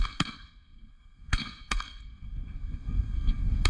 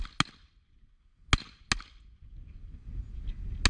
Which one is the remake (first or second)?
first